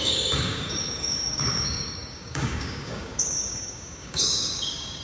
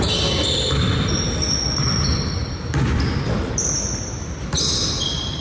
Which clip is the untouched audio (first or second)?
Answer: second